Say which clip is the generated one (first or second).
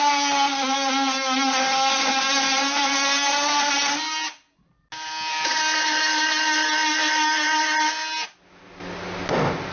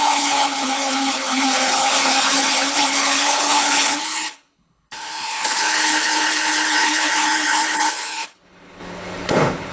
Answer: second